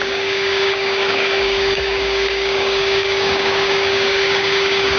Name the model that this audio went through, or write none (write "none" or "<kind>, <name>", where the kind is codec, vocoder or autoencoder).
codec, DAC